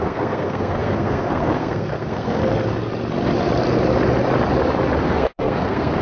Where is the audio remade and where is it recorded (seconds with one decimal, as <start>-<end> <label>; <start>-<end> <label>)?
0.0-2.4 remade; 2.4-5.0 recorded; 5.0-6.0 remade